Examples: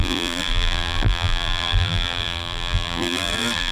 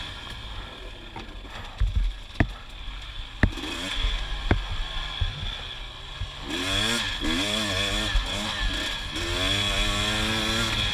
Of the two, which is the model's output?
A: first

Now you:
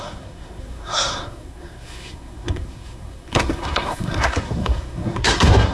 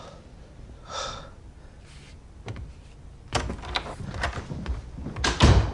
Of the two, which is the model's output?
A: first